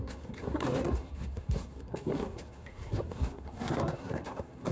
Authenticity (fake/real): fake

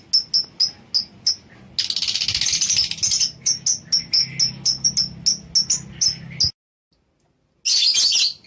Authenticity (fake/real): real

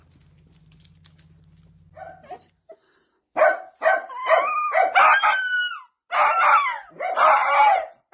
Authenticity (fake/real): real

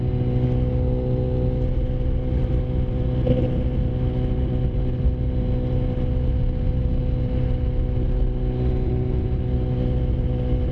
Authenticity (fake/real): real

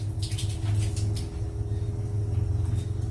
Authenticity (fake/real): real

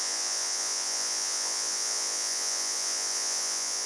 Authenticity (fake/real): fake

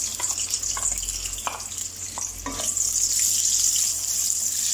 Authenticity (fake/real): real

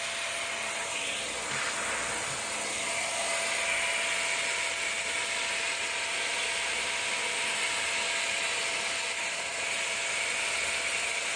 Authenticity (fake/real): real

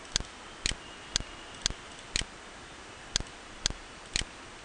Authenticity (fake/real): real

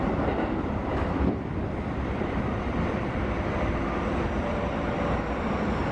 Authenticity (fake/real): fake